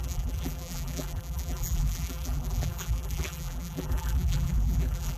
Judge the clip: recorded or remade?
remade